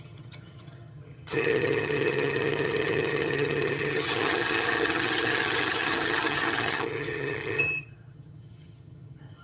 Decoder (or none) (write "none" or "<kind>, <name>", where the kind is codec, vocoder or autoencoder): vocoder, HiFi-GAN